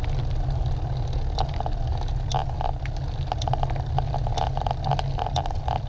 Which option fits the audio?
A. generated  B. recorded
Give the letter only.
B